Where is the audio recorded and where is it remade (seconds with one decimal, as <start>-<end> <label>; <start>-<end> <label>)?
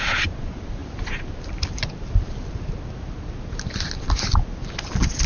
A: 0.0-5.3 recorded